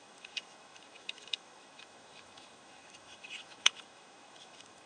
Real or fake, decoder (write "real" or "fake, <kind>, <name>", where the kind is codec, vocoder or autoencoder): fake, autoencoder, DAC-VAE